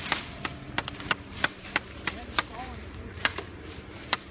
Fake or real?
fake